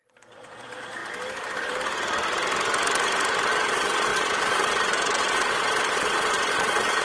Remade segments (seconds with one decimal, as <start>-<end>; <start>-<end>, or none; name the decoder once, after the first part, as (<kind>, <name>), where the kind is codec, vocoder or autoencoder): 0.0-1.0 (vocoder, Vocos); 3.5-7.0